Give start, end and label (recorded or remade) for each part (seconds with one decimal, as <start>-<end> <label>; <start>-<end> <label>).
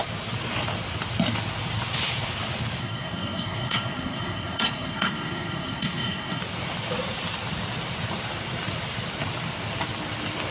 0.0-2.8 recorded; 2.8-6.4 remade; 6.4-10.5 recorded